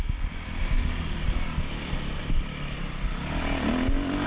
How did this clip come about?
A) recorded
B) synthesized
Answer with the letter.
A